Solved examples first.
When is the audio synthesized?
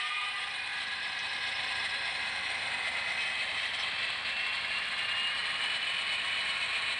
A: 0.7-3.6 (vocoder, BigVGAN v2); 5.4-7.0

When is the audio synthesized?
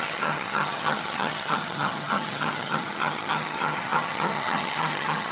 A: 0.0-5.3 (vocoder, HiFi-GAN)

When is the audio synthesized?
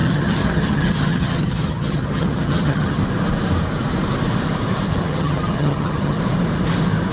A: 0.0-3.0 (vocoder, HiFi-GAN); 5.0-6.2